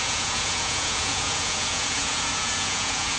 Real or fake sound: fake